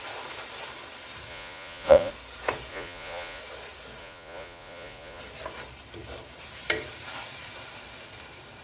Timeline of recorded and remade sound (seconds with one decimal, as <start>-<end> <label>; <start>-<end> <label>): 0.0-1.3 recorded; 1.3-2.1 remade; 2.1-2.7 recorded; 2.7-3.4 remade; 3.4-4.0 recorded; 4.0-5.2 remade; 5.2-8.6 recorded

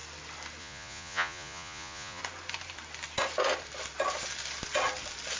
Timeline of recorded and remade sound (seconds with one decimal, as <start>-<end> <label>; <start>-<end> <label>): 0.0-0.6 recorded; 0.6-2.2 remade; 2.2-5.4 recorded

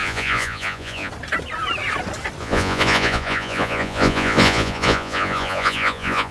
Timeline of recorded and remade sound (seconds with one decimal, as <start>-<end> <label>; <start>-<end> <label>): 0.0-1.1 remade; 1.1-2.4 recorded; 2.4-6.3 remade

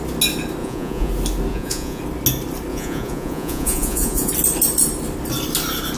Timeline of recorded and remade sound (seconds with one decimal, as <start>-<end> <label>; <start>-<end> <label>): 0.0-0.6 recorded; 0.6-1.1 remade; 1.1-1.5 recorded; 1.5-2.0 remade; 2.0-2.7 recorded; 2.7-4.3 remade; 4.3-6.0 recorded